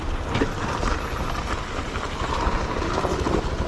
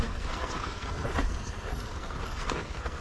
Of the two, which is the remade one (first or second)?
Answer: second